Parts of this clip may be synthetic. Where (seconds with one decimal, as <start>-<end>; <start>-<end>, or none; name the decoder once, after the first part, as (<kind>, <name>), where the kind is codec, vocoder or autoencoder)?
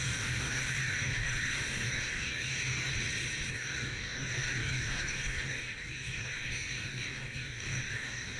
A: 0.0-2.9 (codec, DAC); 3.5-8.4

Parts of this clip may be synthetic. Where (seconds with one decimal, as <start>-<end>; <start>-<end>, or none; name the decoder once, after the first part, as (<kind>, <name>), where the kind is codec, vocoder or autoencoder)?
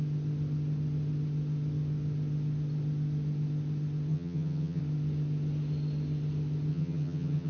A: 4.1-4.8 (vocoder, HiFi-GAN); 6.7-7.5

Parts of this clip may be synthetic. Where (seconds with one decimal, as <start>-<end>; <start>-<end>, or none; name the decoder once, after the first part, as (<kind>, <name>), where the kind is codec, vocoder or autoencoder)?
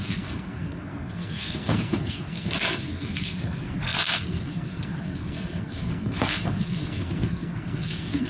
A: 0.0-8.3 (codec, SNAC)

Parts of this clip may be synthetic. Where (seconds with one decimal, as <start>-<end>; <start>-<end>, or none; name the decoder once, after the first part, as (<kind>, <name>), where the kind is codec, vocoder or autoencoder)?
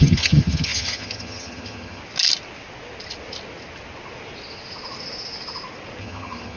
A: 0.0-2.0 (vocoder, HiFi-GAN); 6.0-6.6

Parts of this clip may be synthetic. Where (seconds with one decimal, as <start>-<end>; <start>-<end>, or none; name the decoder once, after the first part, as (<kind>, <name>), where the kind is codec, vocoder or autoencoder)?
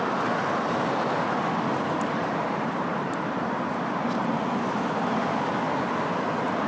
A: 1.7-3.7 (vocoder, BigVGAN v2)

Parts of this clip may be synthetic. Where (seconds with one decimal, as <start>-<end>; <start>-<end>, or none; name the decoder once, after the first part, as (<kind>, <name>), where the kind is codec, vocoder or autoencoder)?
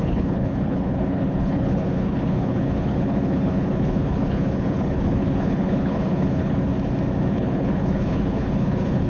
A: 0.0-6.7 (codec, HILCodec); 7.3-9.1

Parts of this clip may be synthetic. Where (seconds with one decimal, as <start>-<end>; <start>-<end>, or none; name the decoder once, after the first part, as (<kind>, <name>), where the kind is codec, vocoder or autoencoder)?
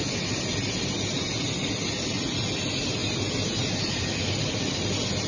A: 0.0-0.5 (vocoder, BigVGAN v2); 1.3-3.0; 3.9-5.3